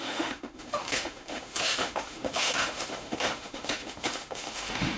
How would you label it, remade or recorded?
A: remade